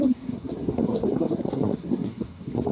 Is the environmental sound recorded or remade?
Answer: remade